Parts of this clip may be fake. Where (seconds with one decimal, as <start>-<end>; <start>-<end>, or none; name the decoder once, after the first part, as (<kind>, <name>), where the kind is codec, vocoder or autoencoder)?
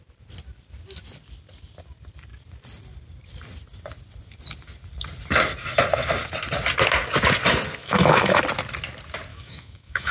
7.8-8.4 (autoencoder, DAC-VAE); 9.3-10.1